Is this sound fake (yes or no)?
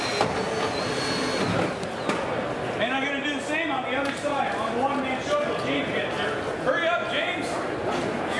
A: no